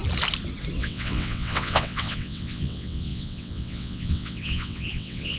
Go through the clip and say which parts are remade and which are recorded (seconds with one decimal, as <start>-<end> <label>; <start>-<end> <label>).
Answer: 0.0-0.8 recorded; 0.8-5.4 remade